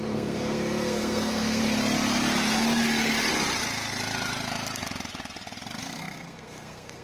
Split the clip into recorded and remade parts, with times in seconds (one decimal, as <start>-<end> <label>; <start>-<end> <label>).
0.0-1.6 remade; 1.6-5.8 recorded; 5.8-7.0 remade